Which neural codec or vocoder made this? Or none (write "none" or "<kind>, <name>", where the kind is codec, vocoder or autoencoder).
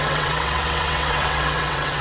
vocoder, WaveNeXt